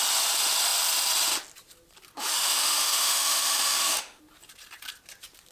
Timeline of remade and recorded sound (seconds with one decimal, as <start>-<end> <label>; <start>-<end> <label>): 0.0-2.3 recorded; 2.3-4.2 remade; 4.2-5.5 recorded